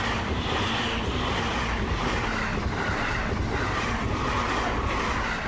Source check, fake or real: real